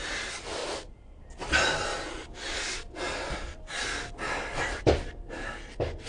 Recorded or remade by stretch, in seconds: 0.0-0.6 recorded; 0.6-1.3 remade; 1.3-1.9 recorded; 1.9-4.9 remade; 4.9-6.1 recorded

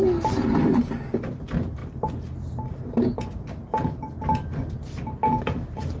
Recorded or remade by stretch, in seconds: 0.0-6.0 recorded

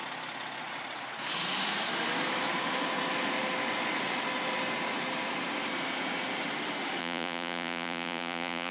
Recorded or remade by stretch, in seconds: 0.0-7.0 recorded; 7.0-8.7 remade

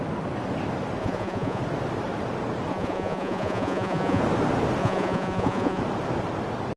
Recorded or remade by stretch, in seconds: 0.0-1.0 recorded; 1.0-1.6 remade; 1.6-2.7 recorded; 2.7-4.2 remade; 4.2-4.8 recorded; 4.8-5.8 remade; 5.8-6.8 recorded

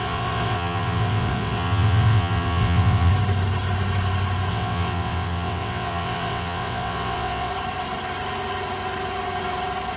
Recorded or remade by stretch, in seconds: 0.0-3.1 remade; 3.1-4.5 recorded; 4.5-7.5 remade; 7.5-10.0 recorded

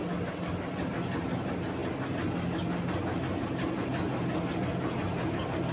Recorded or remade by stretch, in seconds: 0.0-5.7 recorded

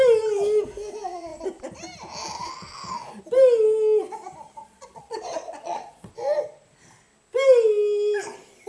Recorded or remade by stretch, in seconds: 0.0-4.6 recorded; 4.6-6.1 remade; 6.1-8.7 recorded